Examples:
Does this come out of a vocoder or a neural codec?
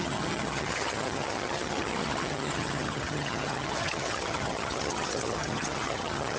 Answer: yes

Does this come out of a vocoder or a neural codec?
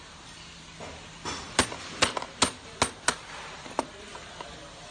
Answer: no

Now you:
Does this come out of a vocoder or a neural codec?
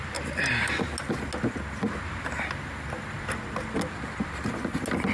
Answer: no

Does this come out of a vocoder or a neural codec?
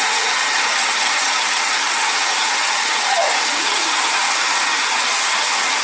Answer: yes